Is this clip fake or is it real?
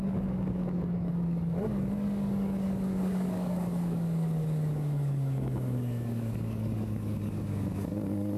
fake